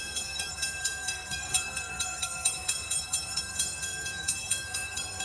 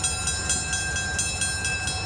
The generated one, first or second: first